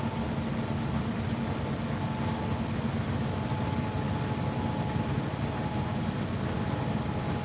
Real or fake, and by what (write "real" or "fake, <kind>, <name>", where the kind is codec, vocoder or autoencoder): real